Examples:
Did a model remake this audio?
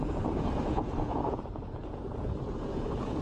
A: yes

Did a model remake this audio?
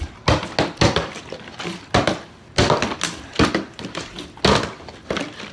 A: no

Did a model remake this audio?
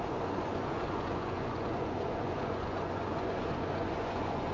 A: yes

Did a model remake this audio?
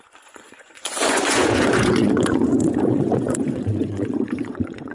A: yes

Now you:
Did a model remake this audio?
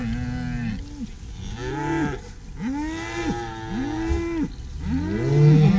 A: no